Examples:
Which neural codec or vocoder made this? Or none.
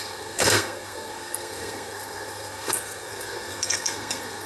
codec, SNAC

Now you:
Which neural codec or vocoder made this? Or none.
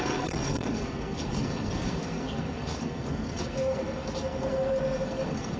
codec, SNAC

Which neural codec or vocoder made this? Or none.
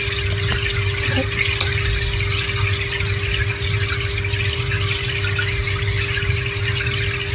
none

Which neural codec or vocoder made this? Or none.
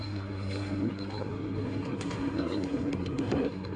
codec, SNAC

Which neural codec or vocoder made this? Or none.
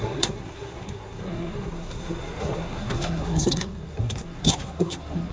codec, SNAC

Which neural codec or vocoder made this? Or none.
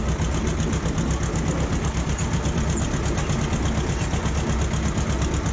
none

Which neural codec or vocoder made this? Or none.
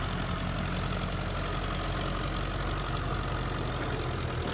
none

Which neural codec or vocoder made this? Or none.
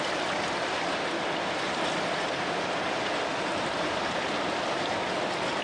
none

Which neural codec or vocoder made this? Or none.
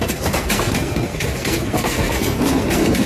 codec, SNAC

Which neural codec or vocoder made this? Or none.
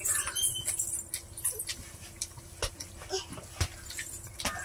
none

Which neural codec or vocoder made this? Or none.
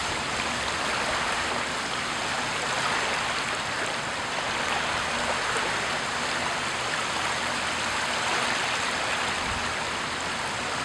none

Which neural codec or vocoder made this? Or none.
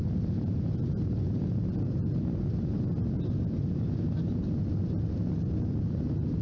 none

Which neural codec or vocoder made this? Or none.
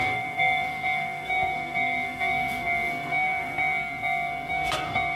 codec, SNAC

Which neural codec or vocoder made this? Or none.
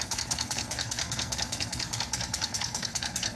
codec, SNAC